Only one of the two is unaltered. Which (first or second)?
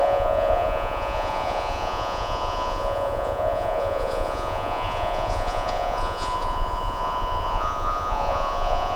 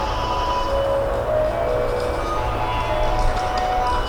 second